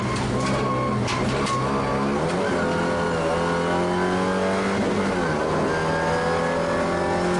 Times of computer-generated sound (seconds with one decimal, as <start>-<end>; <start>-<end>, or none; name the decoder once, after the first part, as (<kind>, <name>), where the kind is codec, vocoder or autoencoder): none

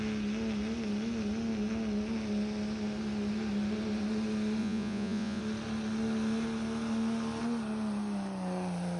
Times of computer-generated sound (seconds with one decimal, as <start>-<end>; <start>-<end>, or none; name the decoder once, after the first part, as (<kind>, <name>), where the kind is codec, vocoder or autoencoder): 4.6-5.4 (vocoder, Vocos)

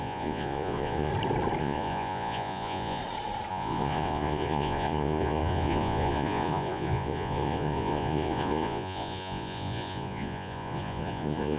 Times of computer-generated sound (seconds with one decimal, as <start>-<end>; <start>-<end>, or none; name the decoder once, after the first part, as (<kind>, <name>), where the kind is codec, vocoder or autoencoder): 0.0-1.1 (vocoder, Vocos); 1.6-3.0; 3.5-11.6

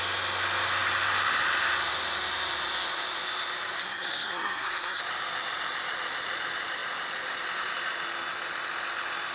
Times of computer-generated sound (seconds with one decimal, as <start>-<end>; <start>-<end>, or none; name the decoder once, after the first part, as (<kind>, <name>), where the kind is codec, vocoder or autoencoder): 3.8-5.0 (codec, SNAC)

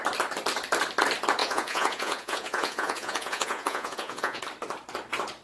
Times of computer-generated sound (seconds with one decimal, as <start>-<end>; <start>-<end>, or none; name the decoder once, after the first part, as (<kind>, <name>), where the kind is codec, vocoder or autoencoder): 1.4-4.4 (vocoder, Vocos)

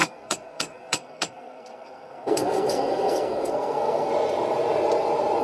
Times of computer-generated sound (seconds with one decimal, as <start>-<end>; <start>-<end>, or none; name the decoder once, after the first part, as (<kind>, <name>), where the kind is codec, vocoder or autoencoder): 0.0-4.1 (codec, SNAC)

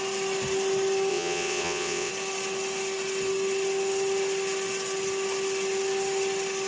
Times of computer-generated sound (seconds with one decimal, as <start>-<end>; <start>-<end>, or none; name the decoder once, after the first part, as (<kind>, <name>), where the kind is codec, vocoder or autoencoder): 1.1-2.1 (vocoder, WaveNeXt)